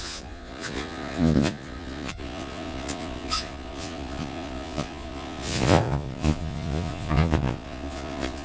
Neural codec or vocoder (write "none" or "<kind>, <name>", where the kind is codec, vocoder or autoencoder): vocoder, Vocos